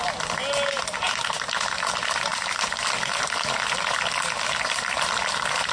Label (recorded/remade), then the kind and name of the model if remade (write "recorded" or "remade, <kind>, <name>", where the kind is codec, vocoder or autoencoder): recorded